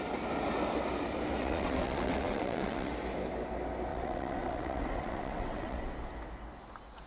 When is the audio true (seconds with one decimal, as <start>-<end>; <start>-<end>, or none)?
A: 0.0-1.4; 2.9-3.9; 5.9-7.1